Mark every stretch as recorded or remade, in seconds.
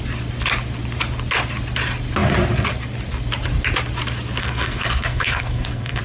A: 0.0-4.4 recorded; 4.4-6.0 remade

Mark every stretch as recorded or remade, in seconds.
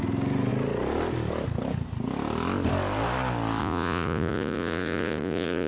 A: 0.0-3.6 recorded; 3.6-5.7 remade